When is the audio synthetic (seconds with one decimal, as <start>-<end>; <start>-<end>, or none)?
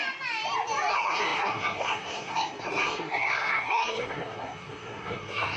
0.9-5.6